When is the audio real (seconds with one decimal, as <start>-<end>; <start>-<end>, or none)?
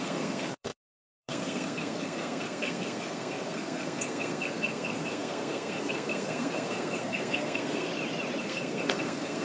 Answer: 7.9-8.4